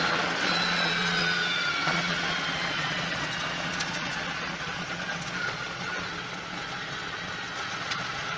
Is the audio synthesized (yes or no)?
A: yes